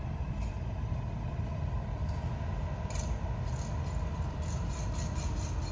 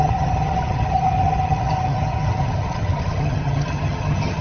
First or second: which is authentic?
first